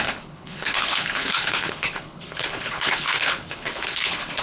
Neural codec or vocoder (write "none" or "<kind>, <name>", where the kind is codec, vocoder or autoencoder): codec, HILCodec